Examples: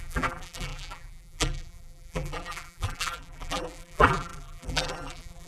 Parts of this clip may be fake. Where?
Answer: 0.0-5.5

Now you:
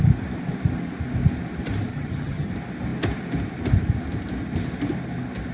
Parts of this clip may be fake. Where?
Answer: 1.9-2.5

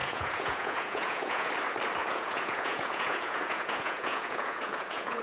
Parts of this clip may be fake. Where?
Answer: 0.0-1.5; 2.0-5.2

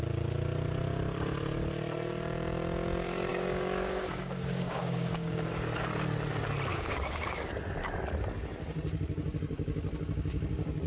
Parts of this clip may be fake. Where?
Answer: 3.3-5.5; 6.7-7.5